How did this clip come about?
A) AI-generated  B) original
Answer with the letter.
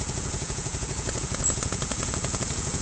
A